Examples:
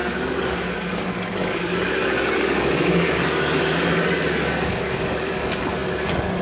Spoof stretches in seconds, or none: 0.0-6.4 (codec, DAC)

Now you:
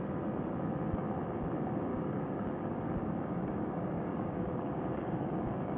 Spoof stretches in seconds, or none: 1.9-5.8 (codec, DAC)

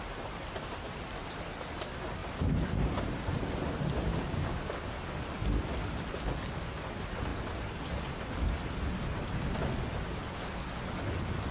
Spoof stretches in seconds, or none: 4.1-4.9 (codec, DAC)

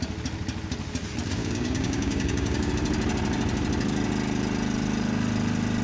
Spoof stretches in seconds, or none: 1.4-2.7 (codec, DAC)

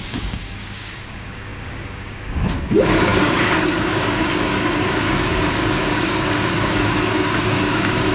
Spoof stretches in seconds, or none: 0.0-8.1 (codec, DAC)

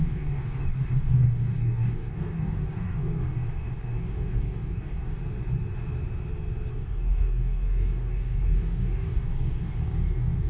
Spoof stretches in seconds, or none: 0.0-5.2 (codec, DAC); 6.7-10.5

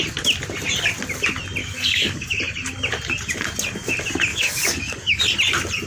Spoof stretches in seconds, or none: 1.6-2.4 (codec, DAC); 4.3-5.2

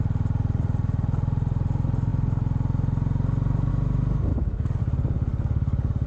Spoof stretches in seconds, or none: 4.3-4.8 (codec, DAC); 5.3-6.1